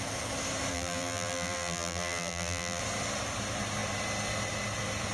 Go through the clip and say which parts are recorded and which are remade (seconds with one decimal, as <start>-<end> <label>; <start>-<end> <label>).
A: 0.0-0.7 recorded; 0.7-2.8 remade; 2.8-5.1 recorded